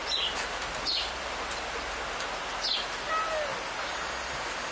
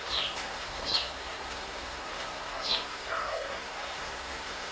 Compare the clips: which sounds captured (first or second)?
first